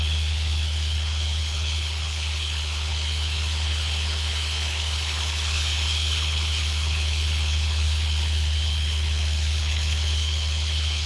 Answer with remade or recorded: remade